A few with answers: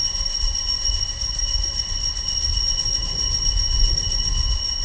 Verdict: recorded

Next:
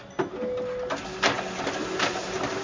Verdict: recorded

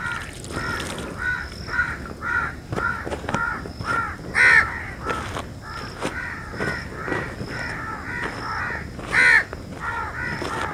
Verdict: recorded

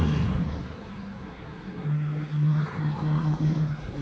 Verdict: remade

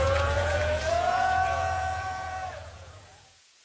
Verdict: remade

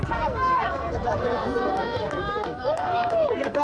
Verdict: remade